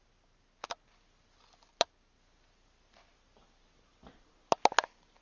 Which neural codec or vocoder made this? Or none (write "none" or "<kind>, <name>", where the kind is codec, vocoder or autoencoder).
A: none